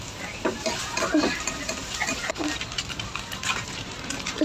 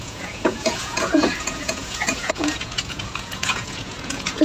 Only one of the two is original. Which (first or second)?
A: first